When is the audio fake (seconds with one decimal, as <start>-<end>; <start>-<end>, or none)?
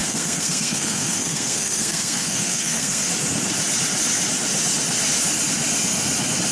0.0-3.1